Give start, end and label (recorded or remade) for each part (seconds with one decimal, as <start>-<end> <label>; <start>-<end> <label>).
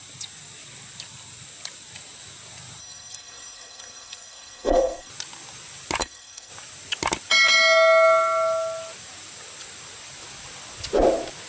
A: 0.0-2.8 recorded; 2.8-5.1 remade; 5.1-6.0 recorded; 6.0-6.5 remade; 6.5-11.5 recorded